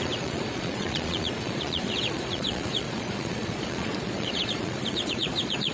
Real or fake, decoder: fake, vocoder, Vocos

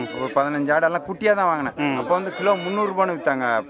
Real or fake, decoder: real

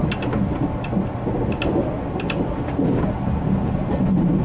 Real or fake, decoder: real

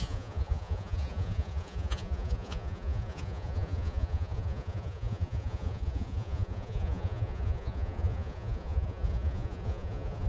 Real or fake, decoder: fake, vocoder, Vocos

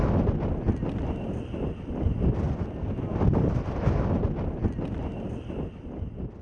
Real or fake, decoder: real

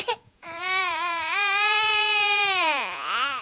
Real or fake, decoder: fake, vocoder, Vocos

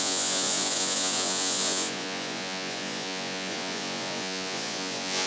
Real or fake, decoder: fake, vocoder, Vocos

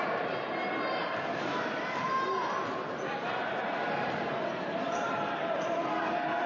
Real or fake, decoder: real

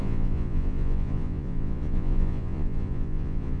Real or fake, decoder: fake, vocoder, Vocos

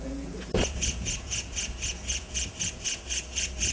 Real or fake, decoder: fake, vocoder, Vocos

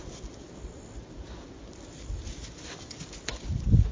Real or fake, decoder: real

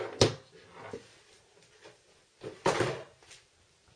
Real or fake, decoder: real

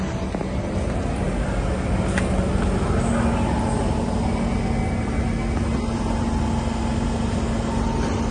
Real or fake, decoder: real